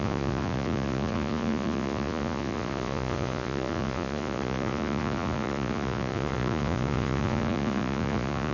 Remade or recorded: remade